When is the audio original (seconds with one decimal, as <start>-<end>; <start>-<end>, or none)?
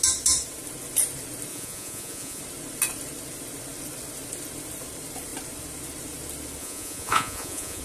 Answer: 0.0-1.5; 2.4-6.6